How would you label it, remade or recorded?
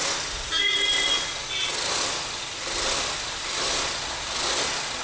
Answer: recorded